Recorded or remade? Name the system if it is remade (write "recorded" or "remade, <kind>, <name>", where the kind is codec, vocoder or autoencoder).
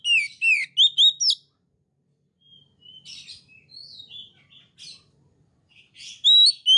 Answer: recorded